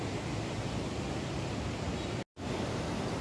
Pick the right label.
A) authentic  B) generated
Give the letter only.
A